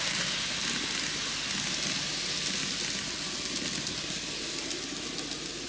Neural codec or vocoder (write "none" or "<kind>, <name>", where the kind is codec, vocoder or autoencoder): none